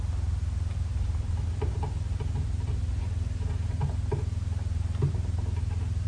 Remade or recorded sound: recorded